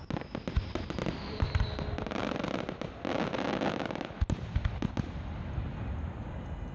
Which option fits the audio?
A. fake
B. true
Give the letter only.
B